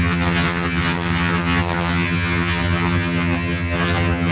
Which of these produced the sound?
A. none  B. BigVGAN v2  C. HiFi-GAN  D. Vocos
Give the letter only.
C